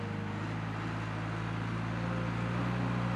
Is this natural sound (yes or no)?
yes